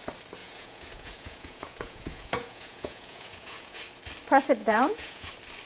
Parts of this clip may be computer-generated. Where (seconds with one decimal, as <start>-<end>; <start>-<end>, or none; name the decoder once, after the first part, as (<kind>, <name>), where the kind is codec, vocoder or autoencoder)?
0.4-3.8 (vocoder, Vocos); 4.6-5.3